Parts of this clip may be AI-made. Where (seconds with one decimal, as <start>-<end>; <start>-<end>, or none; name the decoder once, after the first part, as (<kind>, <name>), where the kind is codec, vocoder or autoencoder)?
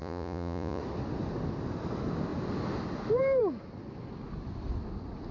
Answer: 0.0-0.8 (vocoder, Vocos)